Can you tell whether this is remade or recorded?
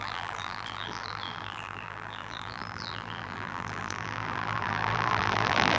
remade